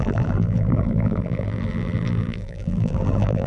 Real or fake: fake